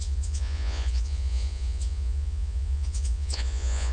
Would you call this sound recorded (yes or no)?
no